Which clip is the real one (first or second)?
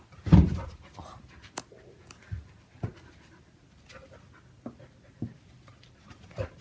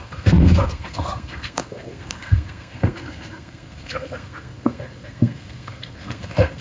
first